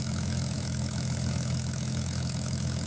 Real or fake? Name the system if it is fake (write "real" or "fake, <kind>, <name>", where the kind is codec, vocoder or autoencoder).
fake, autoencoder, DAC-VAE